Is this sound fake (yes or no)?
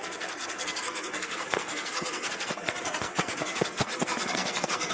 yes